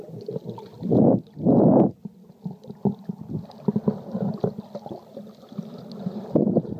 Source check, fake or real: real